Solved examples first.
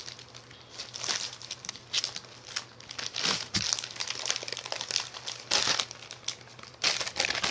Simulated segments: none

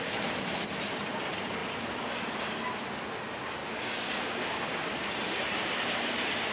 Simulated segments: 3.6-4.9 (codec, DAC)